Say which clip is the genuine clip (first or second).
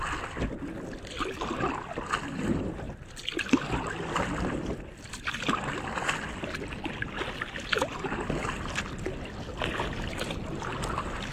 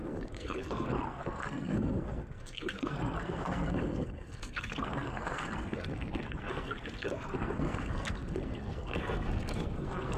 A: first